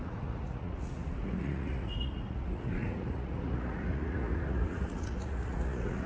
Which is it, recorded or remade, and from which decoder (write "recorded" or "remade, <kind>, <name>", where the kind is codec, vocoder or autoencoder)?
remade, vocoder, Vocos